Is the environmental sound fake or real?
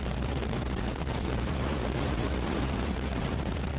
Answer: fake